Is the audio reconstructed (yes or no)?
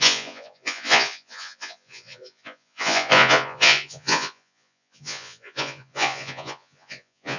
yes